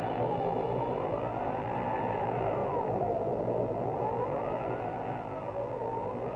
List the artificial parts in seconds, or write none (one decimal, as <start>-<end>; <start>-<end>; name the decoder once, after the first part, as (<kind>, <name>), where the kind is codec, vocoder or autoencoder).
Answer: 0.0-6.4 (vocoder, BigVGAN v2)